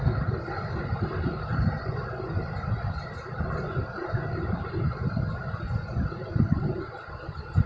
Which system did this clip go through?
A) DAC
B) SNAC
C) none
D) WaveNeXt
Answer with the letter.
C